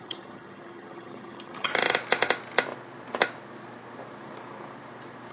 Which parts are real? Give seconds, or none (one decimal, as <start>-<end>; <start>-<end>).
1.7-5.3